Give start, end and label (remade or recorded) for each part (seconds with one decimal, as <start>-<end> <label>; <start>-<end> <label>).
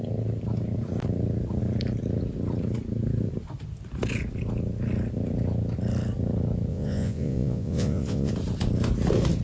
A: 0.0-6.7 recorded; 6.7-8.3 remade; 8.3-9.4 recorded